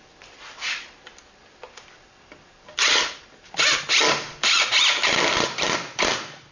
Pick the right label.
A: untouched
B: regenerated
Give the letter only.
A